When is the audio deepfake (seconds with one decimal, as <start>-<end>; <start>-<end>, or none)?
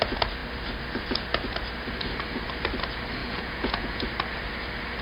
3.2-4.0